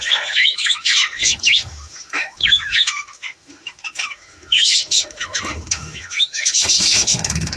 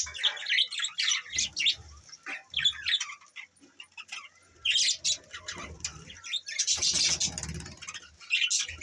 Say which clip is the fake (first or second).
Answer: first